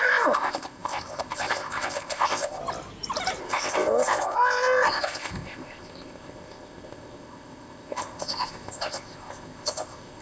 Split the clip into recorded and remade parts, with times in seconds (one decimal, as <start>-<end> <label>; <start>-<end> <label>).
0.0-2.6 remade; 2.6-3.4 recorded; 3.4-10.2 remade